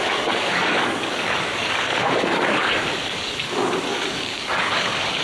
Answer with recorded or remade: remade